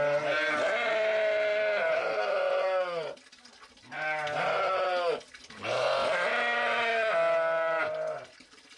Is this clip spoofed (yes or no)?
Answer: no